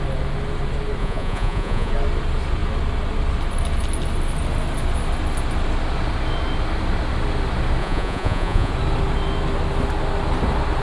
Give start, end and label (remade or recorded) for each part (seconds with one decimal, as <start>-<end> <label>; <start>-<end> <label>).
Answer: 0.0-1.0 recorded; 1.0-1.9 remade; 1.9-7.8 recorded; 7.8-8.7 remade; 8.7-10.8 recorded